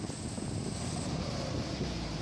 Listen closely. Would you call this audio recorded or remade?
recorded